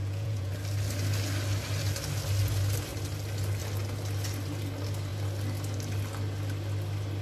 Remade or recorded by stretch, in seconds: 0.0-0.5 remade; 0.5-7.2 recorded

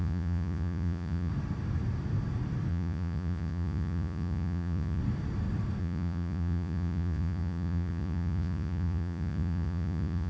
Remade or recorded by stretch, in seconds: 0.0-1.3 remade; 1.3-2.7 recorded; 2.7-5.0 remade; 5.0-5.8 recorded; 5.8-10.3 remade

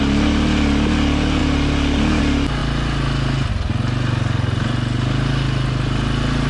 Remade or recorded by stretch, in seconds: 0.0-6.5 recorded

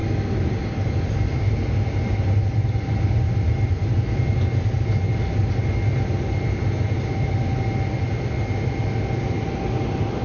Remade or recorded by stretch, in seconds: 0.0-10.2 recorded